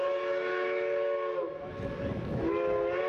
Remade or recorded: recorded